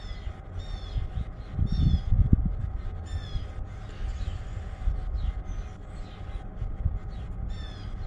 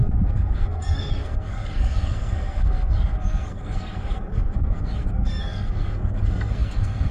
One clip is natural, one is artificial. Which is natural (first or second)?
first